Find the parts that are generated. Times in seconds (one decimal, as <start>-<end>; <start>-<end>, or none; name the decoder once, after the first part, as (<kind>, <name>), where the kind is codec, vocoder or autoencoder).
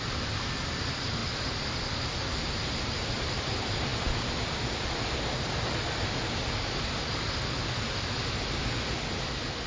none